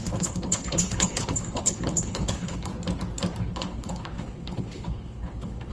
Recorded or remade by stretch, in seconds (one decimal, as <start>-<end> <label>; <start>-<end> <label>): 0.0-2.7 remade; 2.7-3.4 recorded; 3.4-5.7 remade